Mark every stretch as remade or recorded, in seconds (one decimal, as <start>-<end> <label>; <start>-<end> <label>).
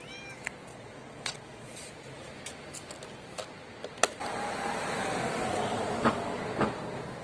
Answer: 0.0-0.7 recorded; 0.7-1.9 remade; 1.9-7.2 recorded